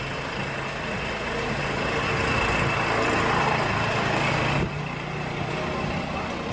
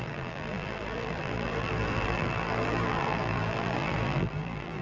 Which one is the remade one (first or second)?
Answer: second